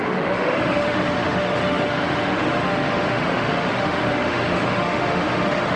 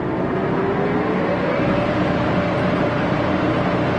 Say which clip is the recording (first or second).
second